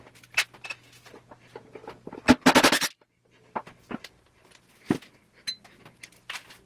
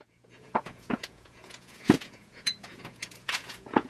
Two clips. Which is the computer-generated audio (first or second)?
second